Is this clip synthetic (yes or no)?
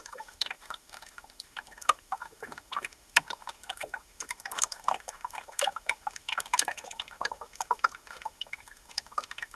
yes